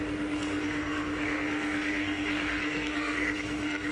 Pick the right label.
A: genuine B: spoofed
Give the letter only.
B